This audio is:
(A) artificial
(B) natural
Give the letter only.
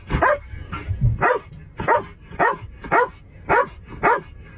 B